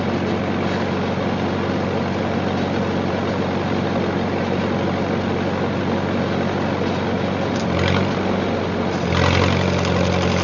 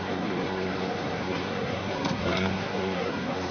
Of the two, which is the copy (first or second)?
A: second